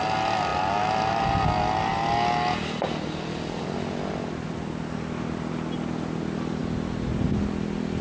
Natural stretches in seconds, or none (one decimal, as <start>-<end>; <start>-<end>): 0.0-8.0